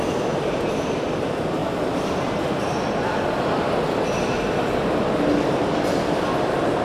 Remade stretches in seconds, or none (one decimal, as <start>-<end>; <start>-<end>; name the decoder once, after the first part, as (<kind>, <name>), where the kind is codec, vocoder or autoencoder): none